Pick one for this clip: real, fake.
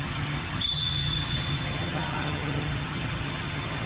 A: fake